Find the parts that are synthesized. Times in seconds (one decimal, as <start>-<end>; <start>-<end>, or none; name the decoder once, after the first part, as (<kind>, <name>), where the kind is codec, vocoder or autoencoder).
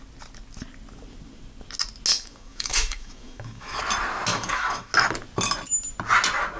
2.1-3.8 (autoencoder, DAC-VAE); 4.3-4.9